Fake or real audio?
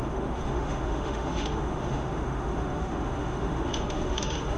fake